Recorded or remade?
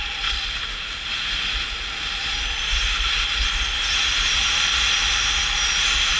recorded